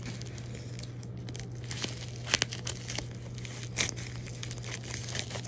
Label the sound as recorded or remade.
recorded